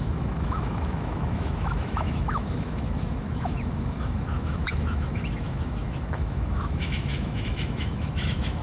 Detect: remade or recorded remade